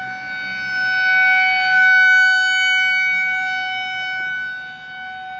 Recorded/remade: recorded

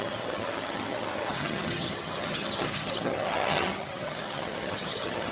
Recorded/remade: remade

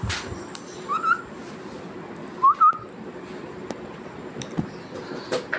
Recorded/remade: recorded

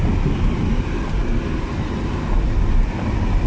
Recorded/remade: recorded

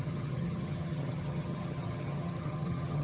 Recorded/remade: remade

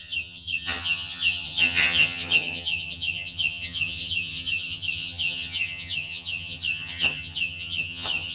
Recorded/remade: remade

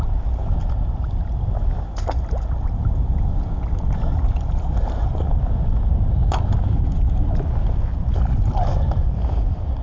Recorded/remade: recorded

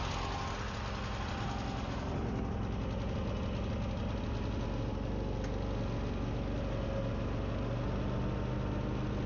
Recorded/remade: recorded